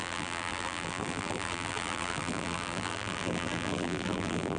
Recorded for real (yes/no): no